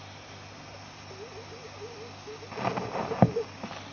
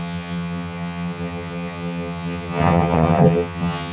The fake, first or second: second